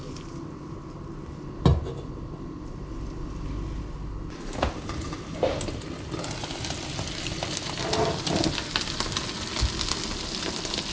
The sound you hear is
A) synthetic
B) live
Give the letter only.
B